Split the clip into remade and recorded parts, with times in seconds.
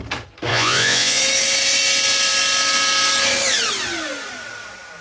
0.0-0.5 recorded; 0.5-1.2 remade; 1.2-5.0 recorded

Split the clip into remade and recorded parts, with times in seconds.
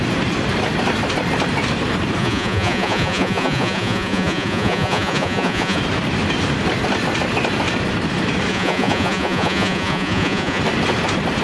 0.0-2.2 recorded; 2.2-5.8 remade; 5.8-8.5 recorded; 8.5-10.6 remade; 10.6-11.4 recorded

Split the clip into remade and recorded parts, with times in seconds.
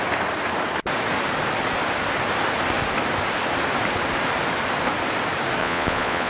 0.0-5.6 recorded; 5.6-6.3 remade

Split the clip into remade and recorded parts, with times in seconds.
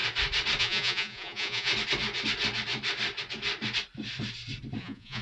0.0-0.6 recorded; 0.6-1.7 remade; 1.7-4.8 recorded; 4.8-5.2 remade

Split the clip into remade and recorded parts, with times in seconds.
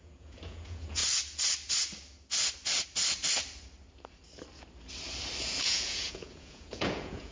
0.0-1.0 remade; 1.0-5.4 recorded; 5.4-7.3 remade